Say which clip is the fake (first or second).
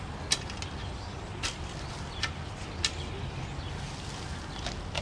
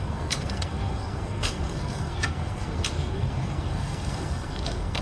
second